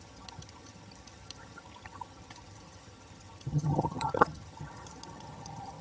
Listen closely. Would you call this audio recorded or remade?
remade